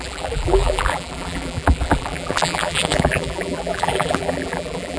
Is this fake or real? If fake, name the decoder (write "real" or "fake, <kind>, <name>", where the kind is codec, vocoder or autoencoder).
fake, vocoder, BigVGAN v2